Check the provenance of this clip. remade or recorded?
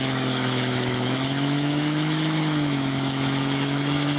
remade